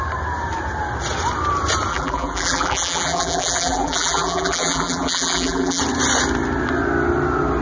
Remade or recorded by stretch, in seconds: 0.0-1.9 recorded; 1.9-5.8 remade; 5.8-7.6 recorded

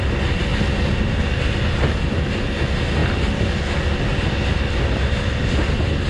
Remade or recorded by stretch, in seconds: 0.0-6.1 recorded

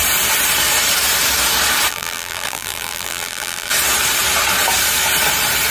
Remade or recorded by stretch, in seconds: 0.0-1.9 recorded; 1.9-3.7 remade; 3.7-5.7 recorded

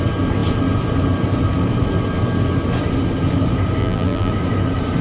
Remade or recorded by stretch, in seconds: 0.0-3.8 recorded; 3.8-4.3 remade; 4.3-5.0 recorded

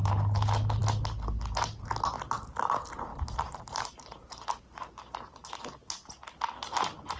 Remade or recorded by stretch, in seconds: 0.0-3.1 recorded; 3.1-5.6 remade; 5.6-7.2 recorded